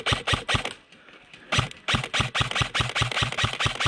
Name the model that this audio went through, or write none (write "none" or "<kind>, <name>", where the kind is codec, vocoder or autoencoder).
none